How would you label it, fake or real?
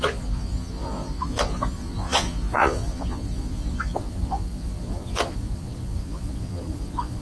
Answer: fake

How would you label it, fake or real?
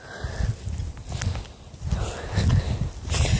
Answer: real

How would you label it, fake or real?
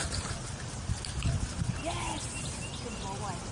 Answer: real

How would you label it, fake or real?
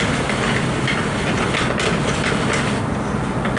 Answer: real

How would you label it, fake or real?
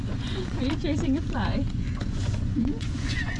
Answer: fake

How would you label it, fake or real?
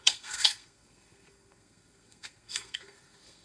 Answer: fake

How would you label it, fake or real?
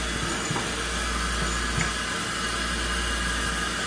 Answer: real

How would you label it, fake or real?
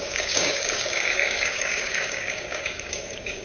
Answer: fake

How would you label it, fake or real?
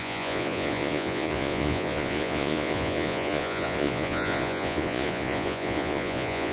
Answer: fake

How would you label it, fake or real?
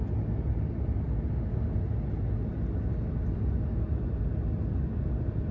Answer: real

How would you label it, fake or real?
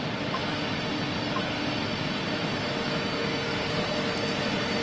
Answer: real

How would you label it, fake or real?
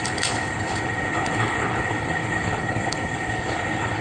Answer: fake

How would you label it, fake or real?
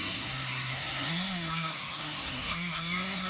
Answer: fake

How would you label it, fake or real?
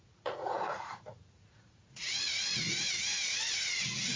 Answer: fake